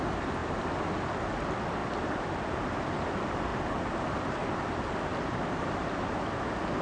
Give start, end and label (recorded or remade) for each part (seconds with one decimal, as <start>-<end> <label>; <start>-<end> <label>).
0.0-3.5 recorded; 3.5-4.0 remade; 4.0-6.8 recorded